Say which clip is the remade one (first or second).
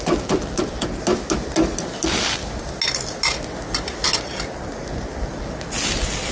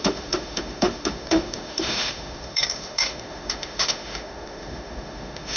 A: second